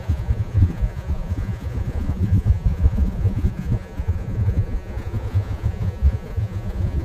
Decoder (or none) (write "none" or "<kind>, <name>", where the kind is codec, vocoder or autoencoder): vocoder, Vocos